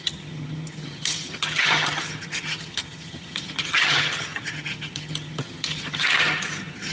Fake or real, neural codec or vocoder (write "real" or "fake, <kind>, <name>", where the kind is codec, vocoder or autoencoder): fake, vocoder, HiFi-GAN